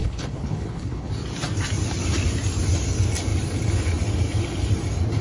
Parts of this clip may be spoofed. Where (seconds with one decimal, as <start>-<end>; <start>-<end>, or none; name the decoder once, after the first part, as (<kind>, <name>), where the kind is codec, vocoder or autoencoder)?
0.0-1.1 (codec, HILCodec)